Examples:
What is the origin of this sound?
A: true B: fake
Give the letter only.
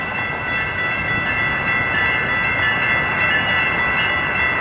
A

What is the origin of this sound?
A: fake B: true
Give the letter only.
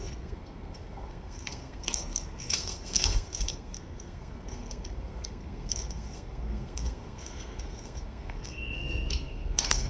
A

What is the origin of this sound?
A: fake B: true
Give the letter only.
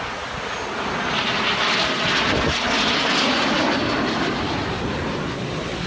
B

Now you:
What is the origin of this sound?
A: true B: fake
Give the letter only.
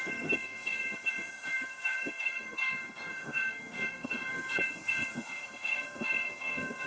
B